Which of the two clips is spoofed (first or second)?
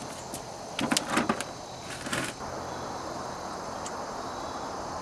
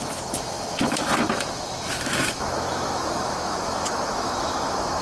second